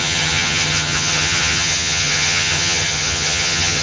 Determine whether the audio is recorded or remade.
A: remade